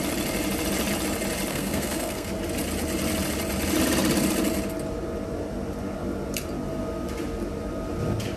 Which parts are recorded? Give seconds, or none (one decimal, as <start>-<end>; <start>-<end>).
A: 0.0-1.5; 2.3-8.4